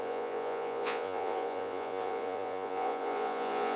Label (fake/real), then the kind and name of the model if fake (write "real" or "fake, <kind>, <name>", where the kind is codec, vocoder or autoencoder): fake, vocoder, Vocos